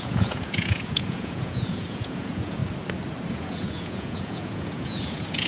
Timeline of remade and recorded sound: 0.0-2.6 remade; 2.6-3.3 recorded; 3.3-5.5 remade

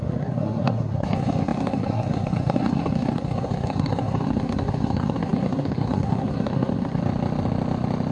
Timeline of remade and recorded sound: 0.0-7.0 remade; 7.0-8.1 recorded

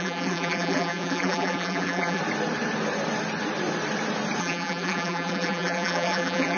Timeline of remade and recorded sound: 0.0-2.2 remade; 2.2-4.4 recorded; 4.4-6.6 remade

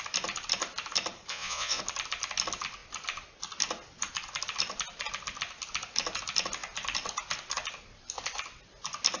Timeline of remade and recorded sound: 0.0-1.3 recorded; 1.3-1.8 remade; 1.8-9.2 recorded

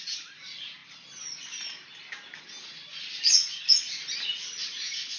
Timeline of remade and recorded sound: 0.0-5.2 recorded

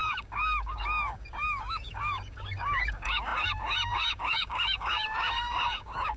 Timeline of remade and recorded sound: 0.0-6.2 remade

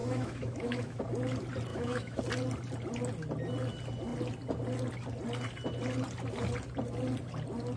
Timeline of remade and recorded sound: 0.0-1.0 remade; 1.0-1.7 recorded; 1.7-2.2 remade; 2.2-7.8 recorded